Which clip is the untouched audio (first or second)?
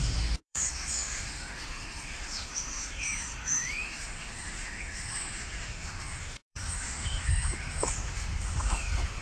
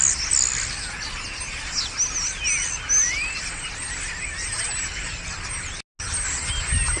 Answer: second